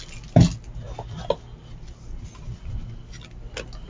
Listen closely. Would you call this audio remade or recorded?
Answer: recorded